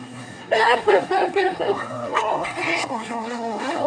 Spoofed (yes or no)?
yes